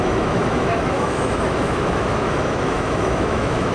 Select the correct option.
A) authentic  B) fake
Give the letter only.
B